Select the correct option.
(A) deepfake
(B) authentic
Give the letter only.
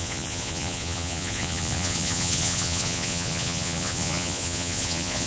A